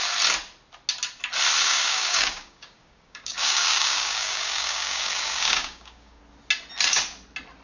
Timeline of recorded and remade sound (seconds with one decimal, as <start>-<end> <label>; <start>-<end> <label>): 0.0-1.6 recorded; 1.6-6.2 remade; 6.2-7.6 recorded